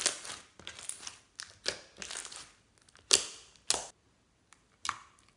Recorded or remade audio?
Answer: recorded